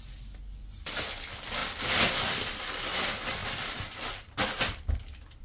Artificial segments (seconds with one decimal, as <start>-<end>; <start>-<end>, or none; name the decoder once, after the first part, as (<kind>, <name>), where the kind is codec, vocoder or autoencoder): none